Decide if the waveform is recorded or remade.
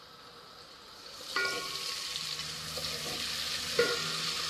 recorded